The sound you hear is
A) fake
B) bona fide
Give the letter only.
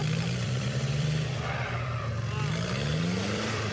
A